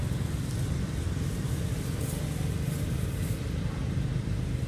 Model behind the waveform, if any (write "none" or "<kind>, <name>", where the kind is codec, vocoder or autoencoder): vocoder, BigVGAN v2